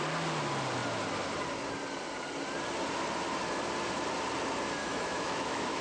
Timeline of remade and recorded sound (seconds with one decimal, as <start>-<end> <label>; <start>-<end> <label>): 0.0-4.8 recorded; 4.8-5.8 remade